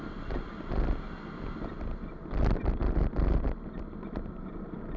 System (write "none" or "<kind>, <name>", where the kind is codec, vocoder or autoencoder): none